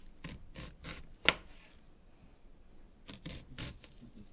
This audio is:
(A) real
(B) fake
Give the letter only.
A